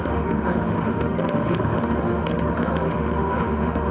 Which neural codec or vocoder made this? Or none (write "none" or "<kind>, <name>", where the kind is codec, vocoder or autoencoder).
autoencoder, DAC-VAE